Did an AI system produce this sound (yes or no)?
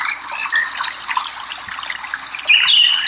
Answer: no